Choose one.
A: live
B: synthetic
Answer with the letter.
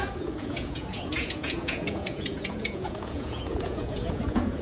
B